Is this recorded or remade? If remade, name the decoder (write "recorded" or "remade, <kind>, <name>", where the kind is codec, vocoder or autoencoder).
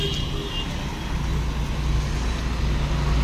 recorded